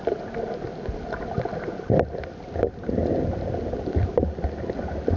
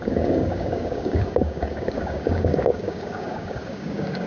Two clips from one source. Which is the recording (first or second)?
first